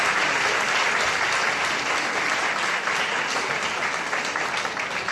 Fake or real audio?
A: real